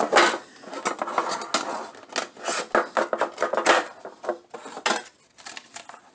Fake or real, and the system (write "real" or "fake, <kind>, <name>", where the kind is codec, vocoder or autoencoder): real